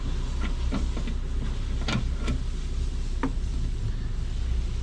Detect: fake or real real